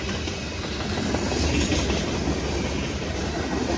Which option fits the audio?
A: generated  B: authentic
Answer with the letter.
B